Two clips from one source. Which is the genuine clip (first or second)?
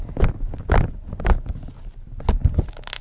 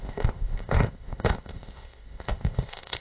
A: first